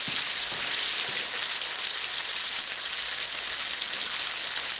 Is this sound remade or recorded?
recorded